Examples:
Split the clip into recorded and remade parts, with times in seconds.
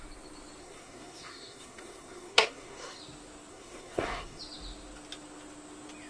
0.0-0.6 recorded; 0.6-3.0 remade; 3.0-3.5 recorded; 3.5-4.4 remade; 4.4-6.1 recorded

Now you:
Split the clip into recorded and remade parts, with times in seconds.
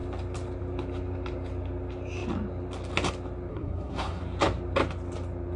0.0-3.5 recorded; 3.5-4.2 remade; 4.2-5.6 recorded